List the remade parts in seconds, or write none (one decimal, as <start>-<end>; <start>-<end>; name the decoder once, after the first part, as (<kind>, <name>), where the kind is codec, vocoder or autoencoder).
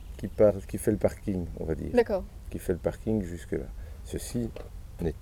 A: 0.5-2.9 (vocoder, BigVGAN v2); 4.2-5.2